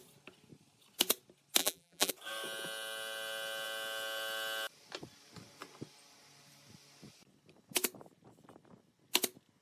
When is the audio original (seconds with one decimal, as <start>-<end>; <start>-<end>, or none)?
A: 0.0-1.6; 2.1-9.6